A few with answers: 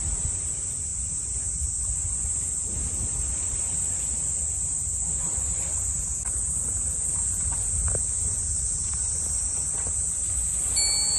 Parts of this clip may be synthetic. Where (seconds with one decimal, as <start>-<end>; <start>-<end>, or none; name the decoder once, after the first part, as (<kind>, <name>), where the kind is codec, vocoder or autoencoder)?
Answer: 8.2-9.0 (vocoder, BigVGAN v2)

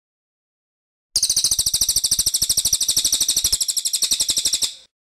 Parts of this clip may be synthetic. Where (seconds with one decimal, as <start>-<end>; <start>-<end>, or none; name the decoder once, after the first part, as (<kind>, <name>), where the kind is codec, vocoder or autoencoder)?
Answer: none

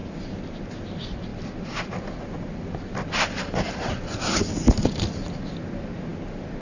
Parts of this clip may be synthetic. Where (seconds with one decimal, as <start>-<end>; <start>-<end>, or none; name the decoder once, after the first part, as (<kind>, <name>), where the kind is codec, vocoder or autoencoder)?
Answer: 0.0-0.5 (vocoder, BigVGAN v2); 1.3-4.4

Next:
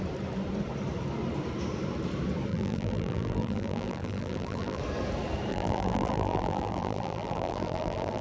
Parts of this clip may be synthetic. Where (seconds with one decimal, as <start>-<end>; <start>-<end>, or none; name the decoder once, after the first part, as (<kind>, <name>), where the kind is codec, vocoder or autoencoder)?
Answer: 2.5-4.8 (vocoder, BigVGAN v2); 5.5-8.2